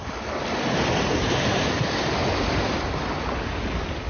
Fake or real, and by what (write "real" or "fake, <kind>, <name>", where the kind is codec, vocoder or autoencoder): real